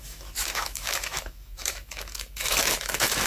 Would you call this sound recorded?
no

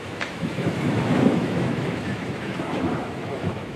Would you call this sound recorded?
no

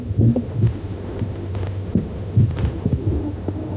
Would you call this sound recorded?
no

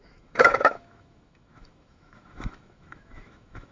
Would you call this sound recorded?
no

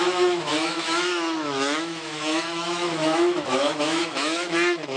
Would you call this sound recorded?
no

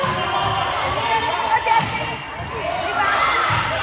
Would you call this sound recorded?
yes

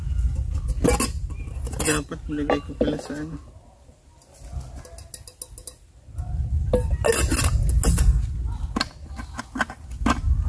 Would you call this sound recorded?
yes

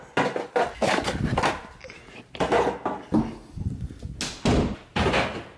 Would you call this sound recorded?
yes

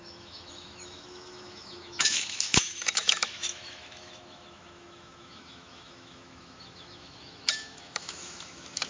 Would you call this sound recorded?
no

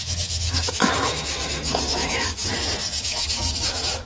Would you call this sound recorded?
no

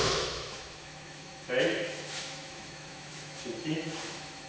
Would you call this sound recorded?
no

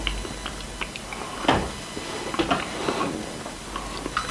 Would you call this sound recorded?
yes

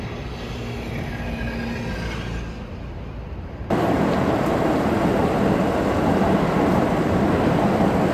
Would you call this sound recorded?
yes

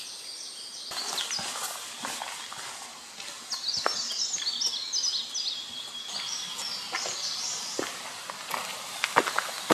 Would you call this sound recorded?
yes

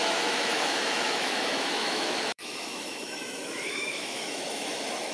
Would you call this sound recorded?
no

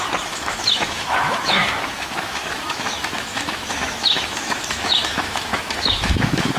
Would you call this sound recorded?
no